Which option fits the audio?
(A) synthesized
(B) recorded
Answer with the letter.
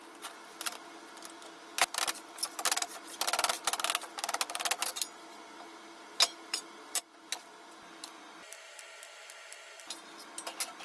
B